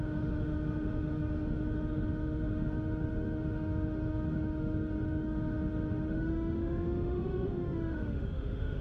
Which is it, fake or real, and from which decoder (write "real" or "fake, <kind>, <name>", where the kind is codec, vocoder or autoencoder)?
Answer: fake, autoencoder, DAC-VAE